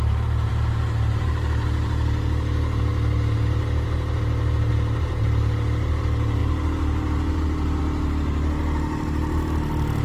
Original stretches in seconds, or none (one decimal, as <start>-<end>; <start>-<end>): 0.0-10.0